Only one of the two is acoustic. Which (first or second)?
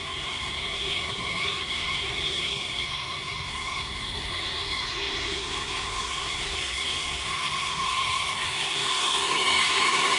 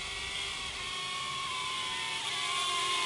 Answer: second